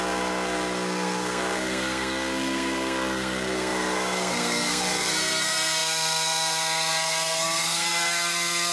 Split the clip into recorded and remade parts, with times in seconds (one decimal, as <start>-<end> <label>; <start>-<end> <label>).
0.0-8.7 remade